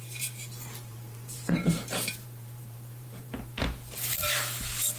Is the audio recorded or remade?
remade